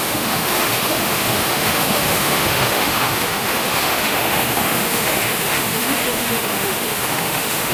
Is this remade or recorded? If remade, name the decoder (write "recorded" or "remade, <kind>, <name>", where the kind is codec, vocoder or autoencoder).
remade, autoencoder, DAC-VAE